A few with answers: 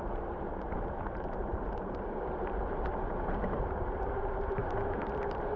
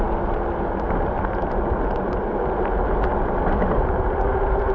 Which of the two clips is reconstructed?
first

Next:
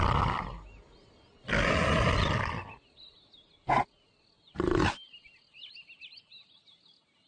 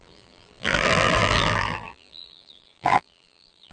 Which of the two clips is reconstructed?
second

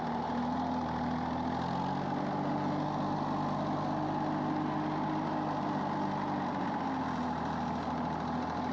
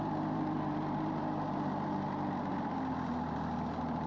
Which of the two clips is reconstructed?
second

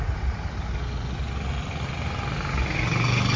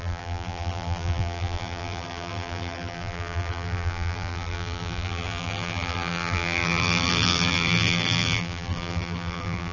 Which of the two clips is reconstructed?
second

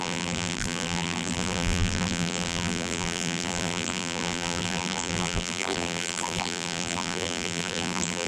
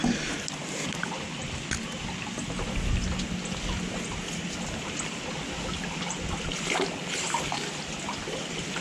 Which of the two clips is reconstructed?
first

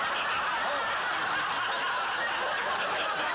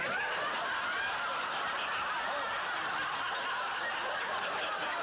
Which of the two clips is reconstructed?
second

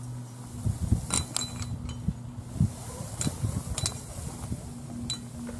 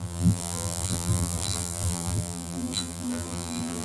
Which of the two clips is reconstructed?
second